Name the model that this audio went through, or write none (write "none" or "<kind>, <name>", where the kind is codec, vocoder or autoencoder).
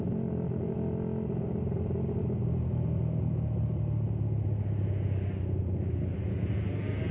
none